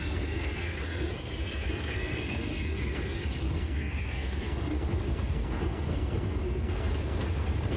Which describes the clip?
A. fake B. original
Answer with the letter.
A